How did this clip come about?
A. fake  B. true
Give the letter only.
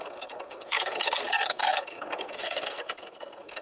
A